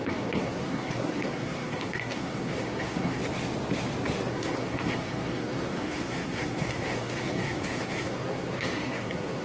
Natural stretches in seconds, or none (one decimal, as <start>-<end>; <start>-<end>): 3.2-4.3